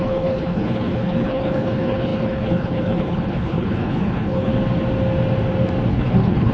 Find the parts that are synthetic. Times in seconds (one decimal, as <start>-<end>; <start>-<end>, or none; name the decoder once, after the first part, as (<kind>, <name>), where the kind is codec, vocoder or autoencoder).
0.0-4.5 (codec, HILCodec); 5.9-6.5